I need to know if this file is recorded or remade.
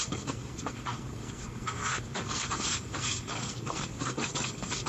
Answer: remade